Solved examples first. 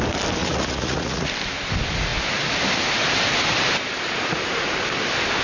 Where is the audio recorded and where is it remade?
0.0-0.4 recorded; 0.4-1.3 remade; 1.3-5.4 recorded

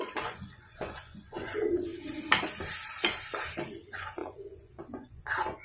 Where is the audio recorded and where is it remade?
0.0-1.9 remade; 1.9-3.8 recorded; 3.8-5.6 remade

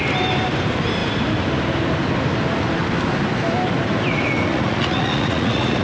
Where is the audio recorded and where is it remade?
0.0-4.5 recorded; 4.5-5.8 remade